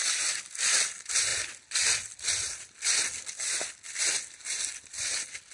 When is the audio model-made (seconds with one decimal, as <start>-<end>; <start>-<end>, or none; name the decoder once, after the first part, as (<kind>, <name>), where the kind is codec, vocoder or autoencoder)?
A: none